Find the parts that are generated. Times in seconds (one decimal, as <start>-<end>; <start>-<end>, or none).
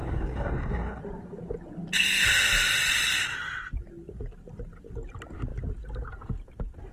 0.0-1.0